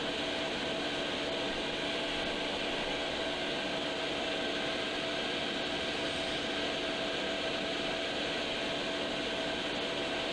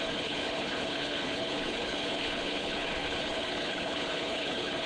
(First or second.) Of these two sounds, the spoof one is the second